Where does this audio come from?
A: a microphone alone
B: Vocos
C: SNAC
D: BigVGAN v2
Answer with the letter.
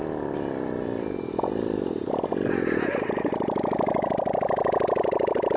A